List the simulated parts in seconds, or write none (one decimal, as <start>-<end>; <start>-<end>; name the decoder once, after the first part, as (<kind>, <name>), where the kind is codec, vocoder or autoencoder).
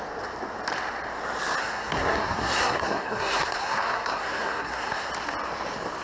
1.6-5.1 (codec, SNAC)